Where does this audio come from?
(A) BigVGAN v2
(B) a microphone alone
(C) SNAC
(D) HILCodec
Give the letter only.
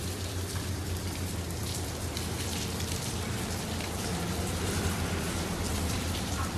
A